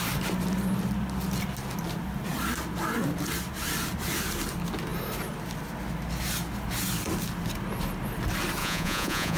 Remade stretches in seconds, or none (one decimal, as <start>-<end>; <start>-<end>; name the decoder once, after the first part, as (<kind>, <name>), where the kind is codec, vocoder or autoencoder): 8.6-9.4 (vocoder, Vocos)